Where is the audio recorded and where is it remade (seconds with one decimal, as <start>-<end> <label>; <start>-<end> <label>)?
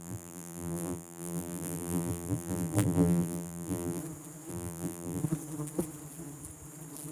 0.0-4.0 remade; 4.0-4.5 recorded; 4.5-5.2 remade; 5.2-7.1 recorded